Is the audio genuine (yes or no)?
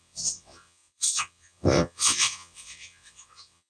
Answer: no